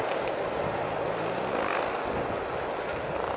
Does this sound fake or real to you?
real